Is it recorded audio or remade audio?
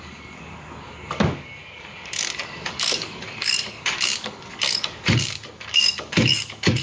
remade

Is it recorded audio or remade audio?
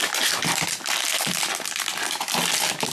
recorded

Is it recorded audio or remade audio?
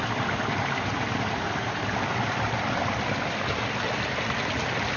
recorded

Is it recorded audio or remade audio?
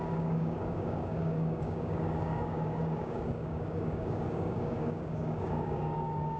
remade